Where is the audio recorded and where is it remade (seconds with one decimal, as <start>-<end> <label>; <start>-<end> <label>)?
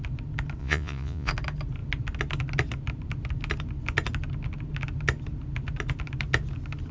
0.0-0.6 recorded; 0.6-1.3 remade; 1.3-6.9 recorded